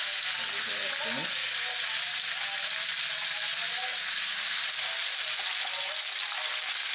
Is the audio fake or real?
real